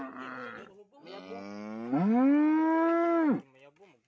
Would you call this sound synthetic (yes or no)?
no